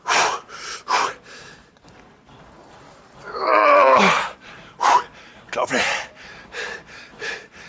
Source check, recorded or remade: remade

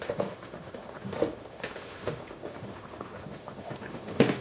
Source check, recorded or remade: remade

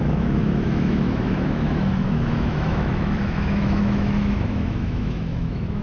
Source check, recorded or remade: remade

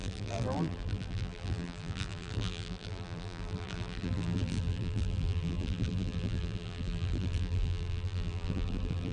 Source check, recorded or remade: remade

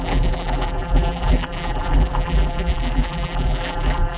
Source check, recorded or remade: remade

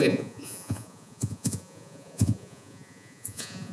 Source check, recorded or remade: remade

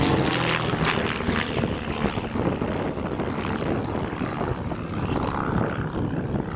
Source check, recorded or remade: recorded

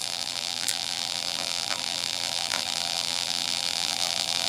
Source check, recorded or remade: remade